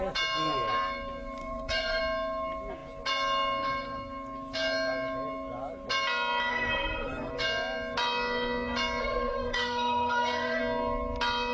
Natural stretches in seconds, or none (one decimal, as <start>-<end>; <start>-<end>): 0.0-1.4; 2.0-6.5; 7.3-9.0; 10.6-11.5